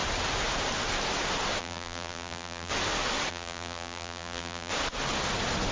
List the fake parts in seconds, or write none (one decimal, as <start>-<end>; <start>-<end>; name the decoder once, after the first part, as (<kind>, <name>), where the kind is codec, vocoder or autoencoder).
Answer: 1.6-2.7 (vocoder, BigVGAN v2); 3.3-4.7